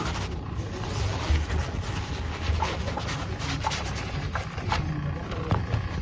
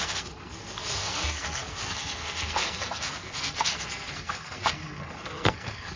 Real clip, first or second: first